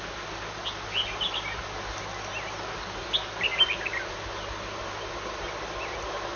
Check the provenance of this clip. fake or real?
real